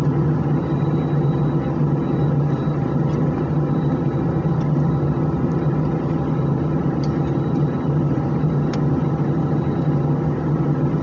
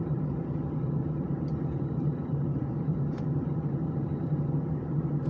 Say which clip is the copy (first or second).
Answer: second